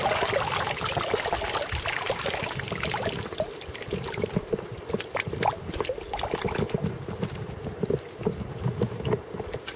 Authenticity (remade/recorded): recorded